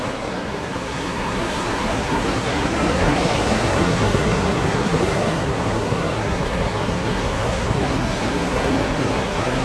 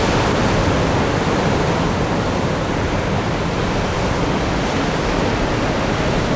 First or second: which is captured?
second